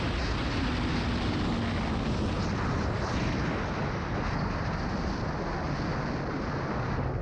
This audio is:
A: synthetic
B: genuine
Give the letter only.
B